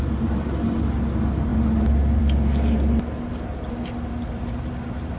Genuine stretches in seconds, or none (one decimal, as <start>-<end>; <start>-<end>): 0.0-5.2